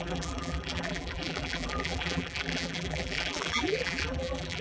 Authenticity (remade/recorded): remade